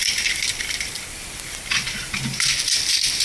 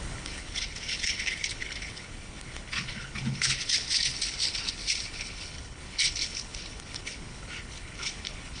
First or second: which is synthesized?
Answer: second